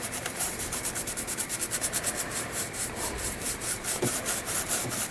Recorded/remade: remade